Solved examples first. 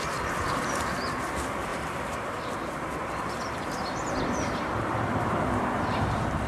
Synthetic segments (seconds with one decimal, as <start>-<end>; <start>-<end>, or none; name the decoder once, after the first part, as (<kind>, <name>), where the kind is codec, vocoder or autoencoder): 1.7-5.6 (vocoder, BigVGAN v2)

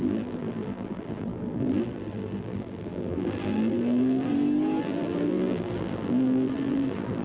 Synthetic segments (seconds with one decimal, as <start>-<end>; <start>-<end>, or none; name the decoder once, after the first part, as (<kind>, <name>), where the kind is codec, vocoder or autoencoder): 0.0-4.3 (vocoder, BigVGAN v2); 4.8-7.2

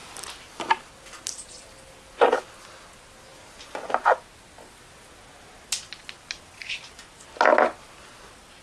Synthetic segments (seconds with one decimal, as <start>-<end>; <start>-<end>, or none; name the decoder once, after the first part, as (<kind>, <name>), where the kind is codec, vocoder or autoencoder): none

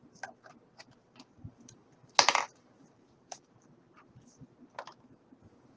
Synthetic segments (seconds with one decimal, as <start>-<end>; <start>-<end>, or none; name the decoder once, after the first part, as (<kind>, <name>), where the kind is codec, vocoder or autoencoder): 1.0-4.5 (vocoder, BigVGAN v2)

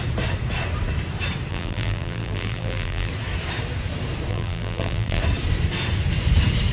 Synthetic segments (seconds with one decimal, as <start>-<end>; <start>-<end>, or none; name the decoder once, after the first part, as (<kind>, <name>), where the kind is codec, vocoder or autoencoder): 1.5-3.1 (vocoder, BigVGAN v2); 4.3-5.2

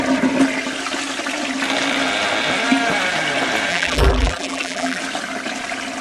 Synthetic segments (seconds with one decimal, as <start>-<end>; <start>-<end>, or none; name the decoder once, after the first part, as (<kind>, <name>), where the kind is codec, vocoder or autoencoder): 3.7-5.0 (vocoder, BigVGAN v2)

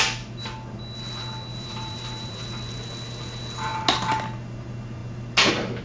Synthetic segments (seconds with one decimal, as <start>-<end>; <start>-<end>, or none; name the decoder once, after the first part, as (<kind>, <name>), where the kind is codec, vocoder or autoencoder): 1.5-2.7 (vocoder, BigVGAN v2)

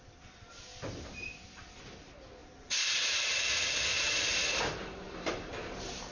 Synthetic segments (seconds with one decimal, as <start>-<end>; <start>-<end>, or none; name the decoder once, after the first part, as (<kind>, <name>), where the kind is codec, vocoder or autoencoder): 2.4-3.3 (vocoder, BigVGAN v2); 3.9-6.1